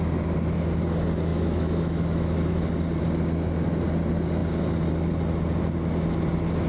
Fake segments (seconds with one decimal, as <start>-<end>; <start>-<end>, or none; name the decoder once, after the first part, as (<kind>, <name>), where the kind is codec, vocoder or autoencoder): 1.3-2.6 (autoencoder, DAC-VAE)